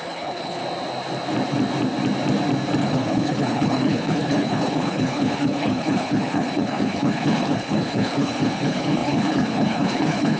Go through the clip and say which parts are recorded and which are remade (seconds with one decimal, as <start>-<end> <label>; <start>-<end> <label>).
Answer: 0.0-0.6 remade; 0.6-2.8 recorded; 2.8-10.4 remade